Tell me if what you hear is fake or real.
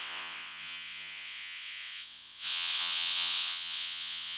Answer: fake